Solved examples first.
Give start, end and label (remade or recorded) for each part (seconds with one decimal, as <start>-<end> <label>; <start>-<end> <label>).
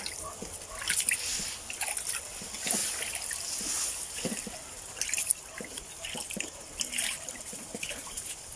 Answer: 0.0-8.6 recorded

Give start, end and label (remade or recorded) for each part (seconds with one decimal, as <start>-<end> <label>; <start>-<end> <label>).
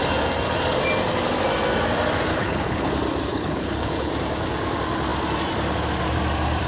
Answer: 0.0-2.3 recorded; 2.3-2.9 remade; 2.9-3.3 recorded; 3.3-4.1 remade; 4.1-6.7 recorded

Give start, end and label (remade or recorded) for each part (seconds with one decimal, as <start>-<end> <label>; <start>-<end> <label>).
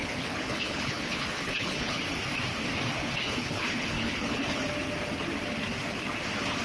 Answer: 0.0-2.0 remade; 2.0-3.0 recorded; 3.0-4.6 remade; 4.6-6.6 recorded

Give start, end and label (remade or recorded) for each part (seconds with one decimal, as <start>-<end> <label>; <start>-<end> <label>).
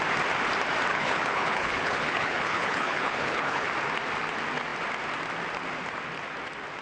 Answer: 0.0-0.9 recorded; 0.9-3.7 remade; 3.7-6.8 recorded